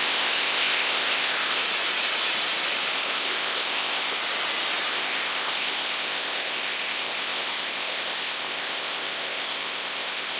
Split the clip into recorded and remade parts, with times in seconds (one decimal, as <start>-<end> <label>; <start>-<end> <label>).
0.0-1.6 remade; 1.6-2.9 recorded; 2.9-4.2 remade; 4.2-4.9 recorded; 4.9-10.4 remade